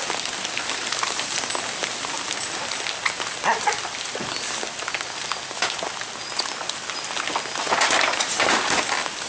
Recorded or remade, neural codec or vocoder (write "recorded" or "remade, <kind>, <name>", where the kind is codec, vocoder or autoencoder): recorded